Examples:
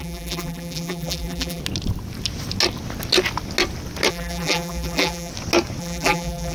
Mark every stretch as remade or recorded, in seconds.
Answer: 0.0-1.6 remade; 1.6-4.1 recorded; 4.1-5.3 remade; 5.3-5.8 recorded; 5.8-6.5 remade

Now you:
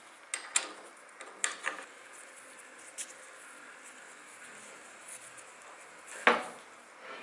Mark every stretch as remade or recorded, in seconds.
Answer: 0.0-7.2 recorded

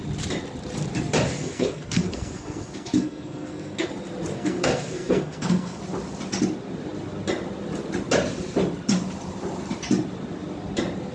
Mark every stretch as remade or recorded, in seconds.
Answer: 0.0-1.4 recorded; 1.4-3.9 remade; 3.9-4.3 recorded; 4.3-5.8 remade; 5.8-11.1 recorded

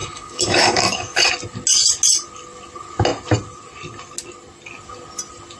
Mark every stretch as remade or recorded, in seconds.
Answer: 0.0-1.3 remade; 1.3-5.6 recorded

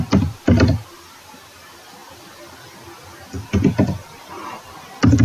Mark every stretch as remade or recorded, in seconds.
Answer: 0.0-5.2 recorded

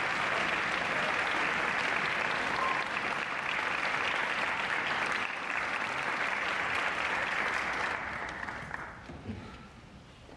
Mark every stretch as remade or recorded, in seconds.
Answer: 0.0-4.2 recorded; 4.2-6.2 remade; 6.2-10.4 recorded